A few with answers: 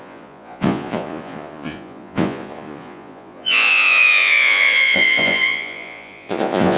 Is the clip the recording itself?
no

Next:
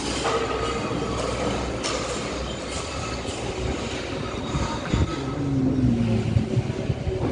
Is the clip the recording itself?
yes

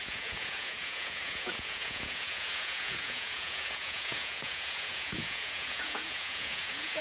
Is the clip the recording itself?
no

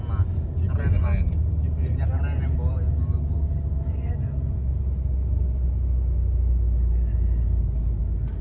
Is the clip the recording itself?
yes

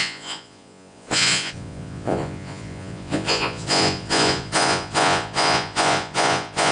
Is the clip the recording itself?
no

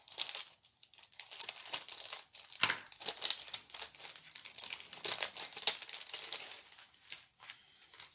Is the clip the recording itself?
yes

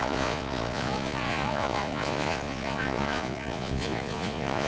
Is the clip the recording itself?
no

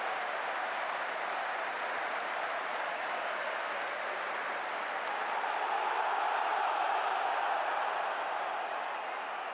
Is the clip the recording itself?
yes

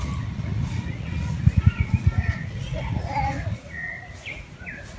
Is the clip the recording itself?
no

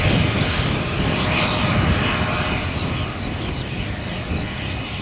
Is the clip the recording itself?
yes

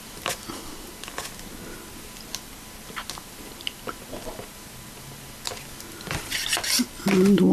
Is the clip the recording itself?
yes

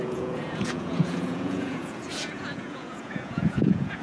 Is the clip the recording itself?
no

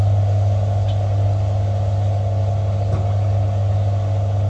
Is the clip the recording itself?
yes